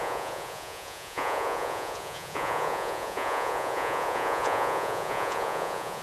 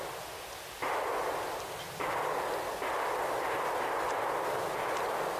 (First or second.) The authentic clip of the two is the second